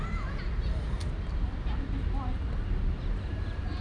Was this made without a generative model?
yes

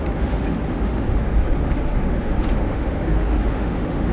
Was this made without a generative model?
no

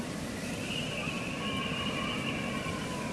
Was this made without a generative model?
yes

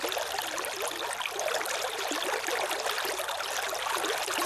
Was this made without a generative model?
yes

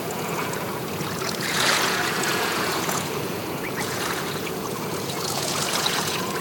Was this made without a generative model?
no